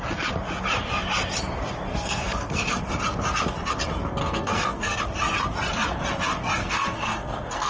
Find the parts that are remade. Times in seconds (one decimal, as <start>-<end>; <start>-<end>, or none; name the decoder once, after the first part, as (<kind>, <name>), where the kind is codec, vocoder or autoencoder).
1.9-2.8 (codec, SNAC); 4.2-5.0; 6.6-7.7